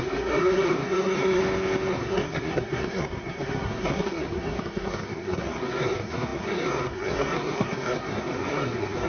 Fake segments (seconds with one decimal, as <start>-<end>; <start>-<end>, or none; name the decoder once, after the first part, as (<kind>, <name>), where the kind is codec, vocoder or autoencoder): 0.0-1.4 (codec, SNAC); 1.9-9.1